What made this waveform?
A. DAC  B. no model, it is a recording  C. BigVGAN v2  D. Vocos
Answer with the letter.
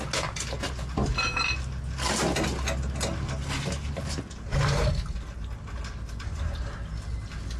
B